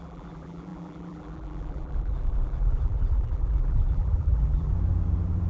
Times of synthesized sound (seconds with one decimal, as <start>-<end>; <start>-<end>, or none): 0.0-4.7